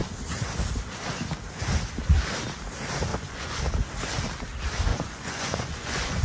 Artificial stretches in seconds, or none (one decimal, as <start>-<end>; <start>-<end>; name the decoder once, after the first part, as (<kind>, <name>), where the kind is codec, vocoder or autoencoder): 3.1-3.6 (vocoder, Vocos); 4.9-6.2